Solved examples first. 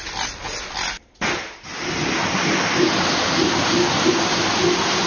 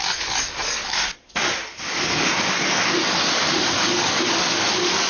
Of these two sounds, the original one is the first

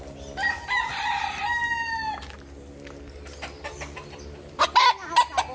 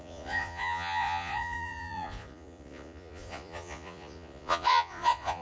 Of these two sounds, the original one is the first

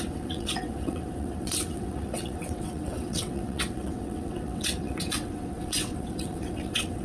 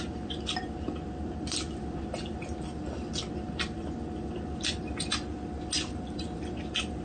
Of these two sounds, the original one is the second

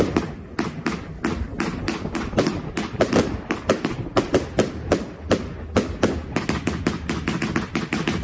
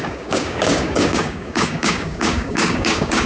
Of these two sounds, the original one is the first